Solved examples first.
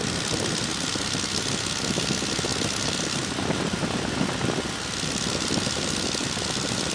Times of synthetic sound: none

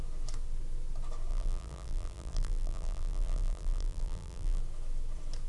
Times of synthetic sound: 1.3-4.6 (vocoder, BigVGAN v2)

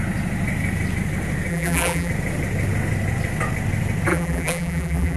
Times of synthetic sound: 1.5-2.1 (vocoder, BigVGAN v2); 4.1-5.2

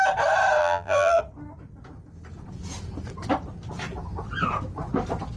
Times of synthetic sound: 0.6-1.2 (vocoder, BigVGAN v2)

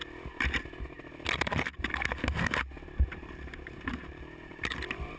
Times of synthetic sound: 3.1-5.2 (vocoder, BigVGAN v2)

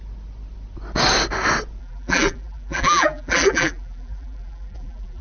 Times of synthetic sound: 1.8-5.2 (vocoder, BigVGAN v2)